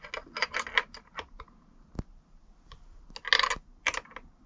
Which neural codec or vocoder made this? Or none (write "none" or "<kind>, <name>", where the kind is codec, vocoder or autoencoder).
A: none